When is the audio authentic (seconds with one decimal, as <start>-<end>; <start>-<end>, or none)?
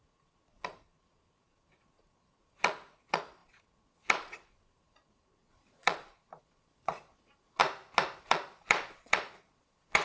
7.6-8.2